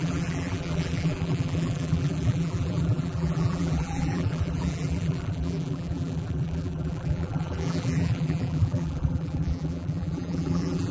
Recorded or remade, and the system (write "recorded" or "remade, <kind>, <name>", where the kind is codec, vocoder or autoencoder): remade, vocoder, BigVGAN v2